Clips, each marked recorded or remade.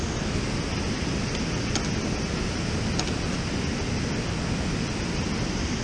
recorded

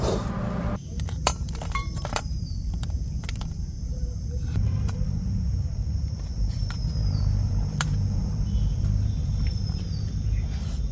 remade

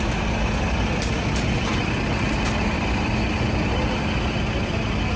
recorded